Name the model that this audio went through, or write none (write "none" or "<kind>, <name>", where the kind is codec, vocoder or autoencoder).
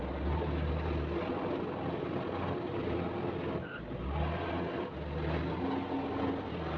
none